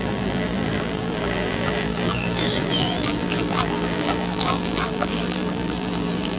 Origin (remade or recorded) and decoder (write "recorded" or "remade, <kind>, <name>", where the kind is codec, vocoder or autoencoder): remade, vocoder, BigVGAN v2